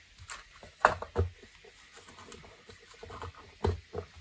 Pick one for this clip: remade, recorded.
recorded